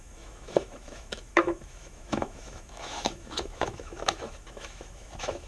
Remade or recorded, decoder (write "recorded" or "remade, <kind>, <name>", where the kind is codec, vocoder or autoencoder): remade, autoencoder, DAC-VAE